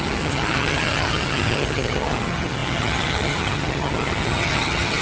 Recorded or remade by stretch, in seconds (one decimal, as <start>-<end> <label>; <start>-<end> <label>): 0.0-5.0 remade